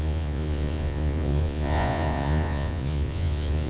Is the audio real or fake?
fake